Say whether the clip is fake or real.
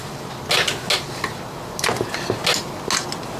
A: real